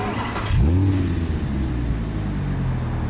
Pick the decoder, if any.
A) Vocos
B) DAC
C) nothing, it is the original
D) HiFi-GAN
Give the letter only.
C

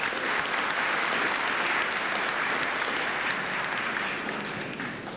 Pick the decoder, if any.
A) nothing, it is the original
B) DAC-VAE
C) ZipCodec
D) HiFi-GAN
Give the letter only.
A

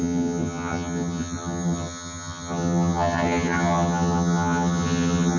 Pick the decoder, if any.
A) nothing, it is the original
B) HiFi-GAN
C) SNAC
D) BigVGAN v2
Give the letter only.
B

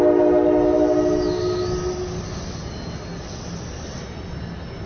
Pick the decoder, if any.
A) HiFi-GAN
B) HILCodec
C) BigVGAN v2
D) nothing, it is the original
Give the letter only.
D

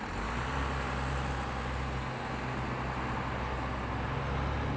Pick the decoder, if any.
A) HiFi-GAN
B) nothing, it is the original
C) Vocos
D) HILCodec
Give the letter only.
B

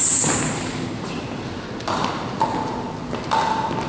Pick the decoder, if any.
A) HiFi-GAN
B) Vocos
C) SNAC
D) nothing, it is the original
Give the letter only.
D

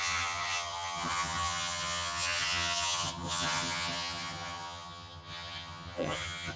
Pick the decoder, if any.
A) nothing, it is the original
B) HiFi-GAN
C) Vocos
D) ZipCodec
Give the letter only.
B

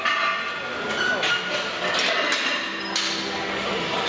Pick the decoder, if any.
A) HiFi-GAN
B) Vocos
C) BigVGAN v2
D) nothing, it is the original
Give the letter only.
D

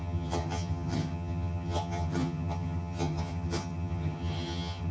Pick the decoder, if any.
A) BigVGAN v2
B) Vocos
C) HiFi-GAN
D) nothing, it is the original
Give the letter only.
C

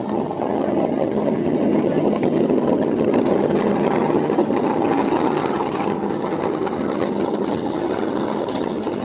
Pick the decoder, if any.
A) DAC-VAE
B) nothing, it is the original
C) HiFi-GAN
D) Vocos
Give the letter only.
C